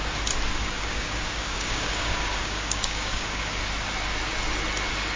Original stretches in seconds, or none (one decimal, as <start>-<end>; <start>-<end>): 0.0-0.5; 3.6-5.2